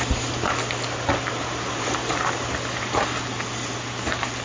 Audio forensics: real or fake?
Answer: real